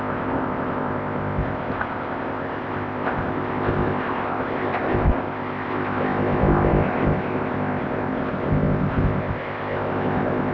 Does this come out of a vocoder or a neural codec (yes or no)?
yes